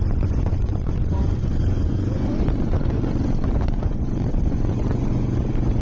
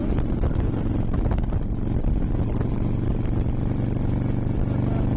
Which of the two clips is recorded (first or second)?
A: second